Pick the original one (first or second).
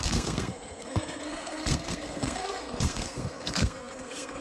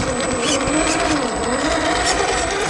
second